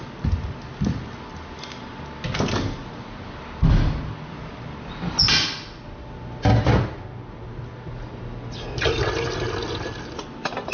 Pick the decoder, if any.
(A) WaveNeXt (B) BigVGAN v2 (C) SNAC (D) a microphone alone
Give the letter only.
D